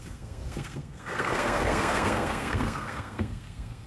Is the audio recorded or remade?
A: remade